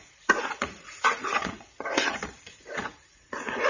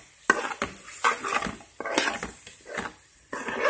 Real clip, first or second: second